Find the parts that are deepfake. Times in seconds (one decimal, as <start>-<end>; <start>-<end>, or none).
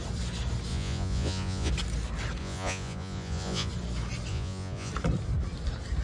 0.7-1.7; 2.4-3.7; 4.3-4.9